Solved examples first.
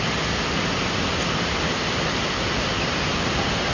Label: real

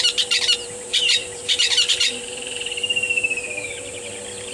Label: fake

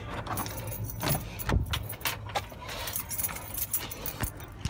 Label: real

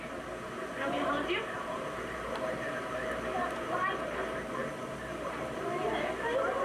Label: fake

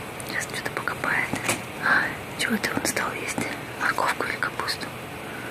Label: real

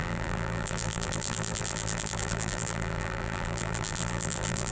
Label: fake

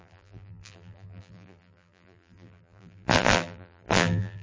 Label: fake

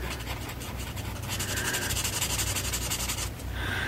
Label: real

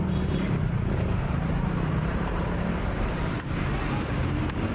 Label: fake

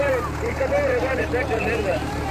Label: fake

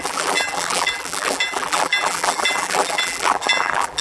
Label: fake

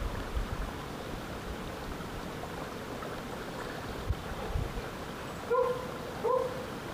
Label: real